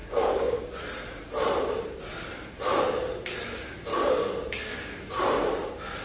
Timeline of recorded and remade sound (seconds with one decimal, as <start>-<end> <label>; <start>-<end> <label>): 0.0-0.6 remade; 0.6-3.9 recorded; 3.9-5.1 remade; 5.1-6.0 recorded

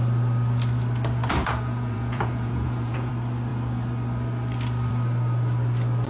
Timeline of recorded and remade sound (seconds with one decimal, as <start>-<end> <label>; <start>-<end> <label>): 0.0-1.4 recorded; 1.4-3.1 remade; 3.1-6.1 recorded

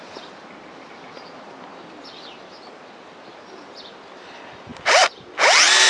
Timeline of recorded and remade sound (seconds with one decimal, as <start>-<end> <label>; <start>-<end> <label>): 0.0-4.7 remade; 4.7-5.9 recorded

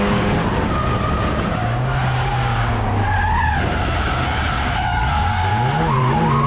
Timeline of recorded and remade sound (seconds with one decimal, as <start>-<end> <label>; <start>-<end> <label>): 0.0-0.4 remade; 0.4-1.3 recorded; 1.3-3.0 remade; 3.0-4.0 recorded; 4.0-5.5 remade; 5.5-6.0 recorded; 6.0-6.5 remade

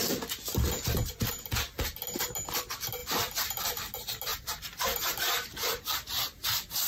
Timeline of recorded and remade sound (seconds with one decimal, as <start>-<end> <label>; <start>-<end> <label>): 0.0-3.0 recorded; 3.0-3.8 remade; 3.8-4.3 recorded; 4.3-6.9 remade

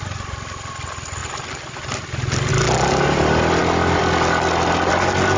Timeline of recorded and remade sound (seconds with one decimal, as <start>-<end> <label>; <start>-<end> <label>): 0.0-5.4 recorded